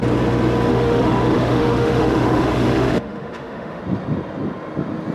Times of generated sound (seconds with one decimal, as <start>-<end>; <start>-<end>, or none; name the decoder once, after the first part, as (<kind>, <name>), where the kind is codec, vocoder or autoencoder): 0.7-3.8 (autoencoder, DAC-VAE)